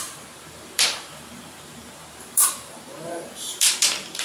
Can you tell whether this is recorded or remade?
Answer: remade